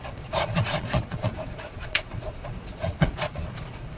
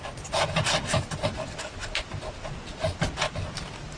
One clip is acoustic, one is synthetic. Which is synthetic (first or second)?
first